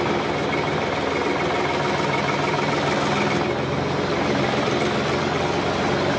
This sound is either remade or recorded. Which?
recorded